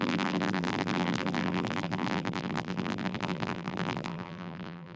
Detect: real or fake fake